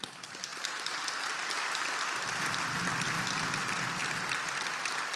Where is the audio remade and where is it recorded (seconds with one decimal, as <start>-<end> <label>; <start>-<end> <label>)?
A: 0.0-5.2 recorded